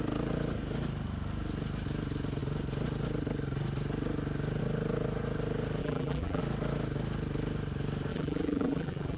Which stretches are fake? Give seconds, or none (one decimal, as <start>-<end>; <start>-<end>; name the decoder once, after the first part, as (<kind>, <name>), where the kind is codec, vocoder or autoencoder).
5.8-6.4 (vocoder, BigVGAN v2); 8.1-9.2